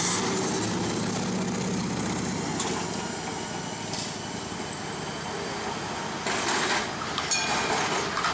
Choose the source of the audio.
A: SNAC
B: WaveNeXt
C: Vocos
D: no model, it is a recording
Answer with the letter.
D